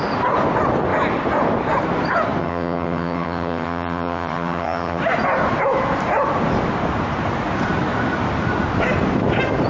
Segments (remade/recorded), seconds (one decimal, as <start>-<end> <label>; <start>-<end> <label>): 0.0-2.4 recorded; 2.4-5.0 remade; 5.0-9.7 recorded